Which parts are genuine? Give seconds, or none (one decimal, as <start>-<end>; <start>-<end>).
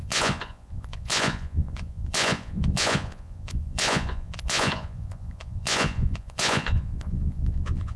none